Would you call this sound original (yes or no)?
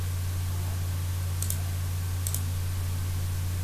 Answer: yes